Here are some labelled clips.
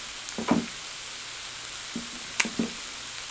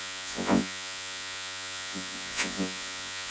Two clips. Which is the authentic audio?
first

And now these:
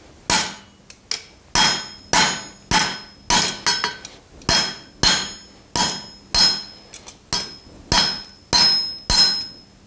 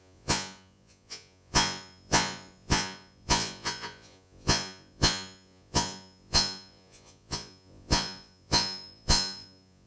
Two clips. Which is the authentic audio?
first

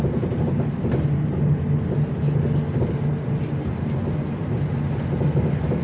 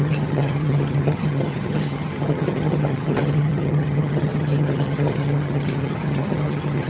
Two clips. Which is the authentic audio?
first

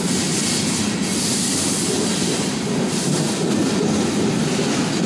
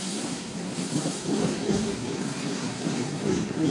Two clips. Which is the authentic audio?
first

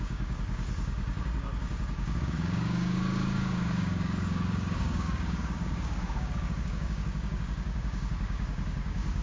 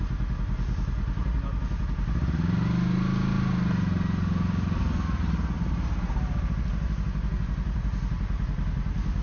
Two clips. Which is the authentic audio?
second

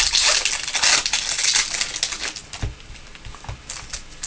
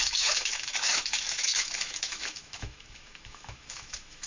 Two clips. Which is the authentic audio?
first